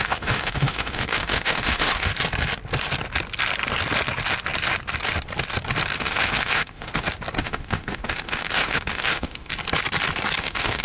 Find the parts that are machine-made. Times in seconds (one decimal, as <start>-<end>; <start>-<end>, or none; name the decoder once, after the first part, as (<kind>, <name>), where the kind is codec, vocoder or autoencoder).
0.0-2.1 (autoencoder, DAC-VAE); 6.0-6.9; 7.4-9.5; 10.4-10.8